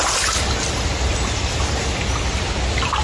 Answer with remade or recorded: recorded